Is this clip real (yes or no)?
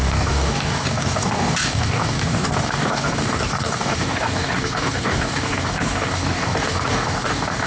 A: no